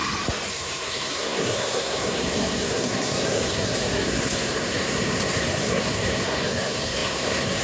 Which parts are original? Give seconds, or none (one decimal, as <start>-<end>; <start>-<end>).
0.0-0.5